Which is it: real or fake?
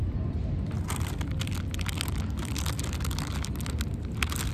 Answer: real